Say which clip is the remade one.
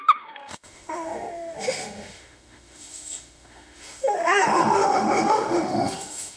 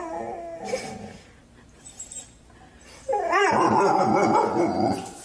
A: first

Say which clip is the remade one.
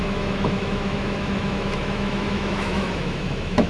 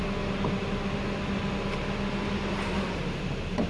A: first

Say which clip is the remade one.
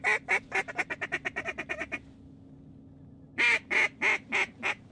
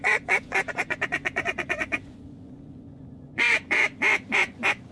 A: second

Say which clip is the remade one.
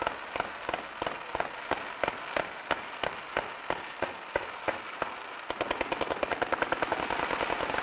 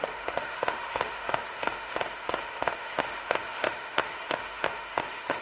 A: second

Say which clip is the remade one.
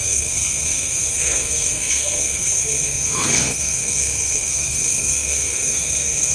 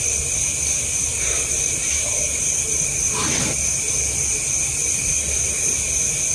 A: first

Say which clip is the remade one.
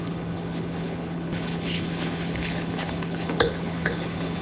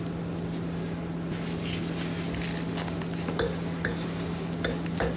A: first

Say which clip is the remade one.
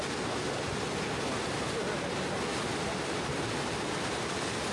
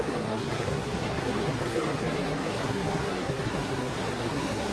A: second